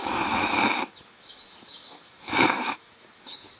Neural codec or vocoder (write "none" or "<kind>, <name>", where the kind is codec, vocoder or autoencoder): autoencoder, DAC-VAE